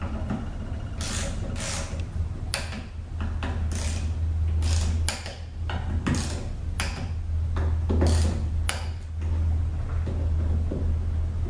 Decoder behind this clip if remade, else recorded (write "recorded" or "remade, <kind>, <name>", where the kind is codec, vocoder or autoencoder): recorded